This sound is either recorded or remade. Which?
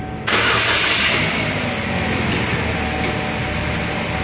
recorded